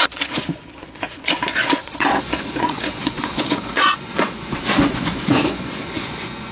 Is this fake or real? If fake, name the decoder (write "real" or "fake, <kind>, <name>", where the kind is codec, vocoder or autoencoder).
fake, vocoder, Vocos